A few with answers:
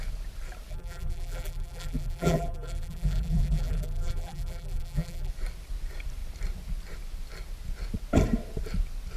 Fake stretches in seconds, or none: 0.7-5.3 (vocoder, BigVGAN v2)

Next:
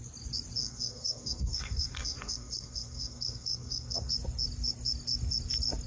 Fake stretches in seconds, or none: 0.6-4.1 (codec, SNAC)

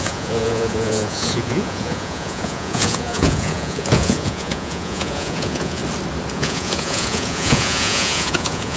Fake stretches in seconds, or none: 0.0-5.8 (vocoder, Vocos); 6.3-8.8

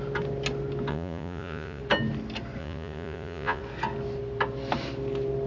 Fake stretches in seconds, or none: 0.9-1.8 (vocoder, Vocos); 2.6-3.6